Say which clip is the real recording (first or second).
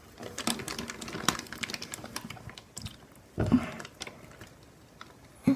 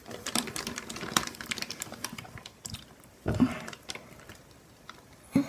first